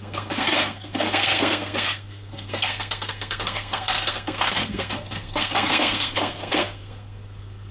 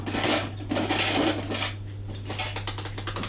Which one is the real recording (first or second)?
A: second